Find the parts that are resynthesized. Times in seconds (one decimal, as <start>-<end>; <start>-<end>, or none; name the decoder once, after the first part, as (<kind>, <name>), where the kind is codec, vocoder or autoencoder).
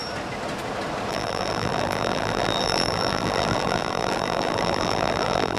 1.1-5.6 (vocoder, BigVGAN v2)